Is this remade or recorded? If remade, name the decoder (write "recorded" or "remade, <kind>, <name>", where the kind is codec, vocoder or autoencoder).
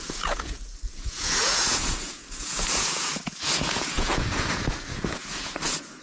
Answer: remade, vocoder, Vocos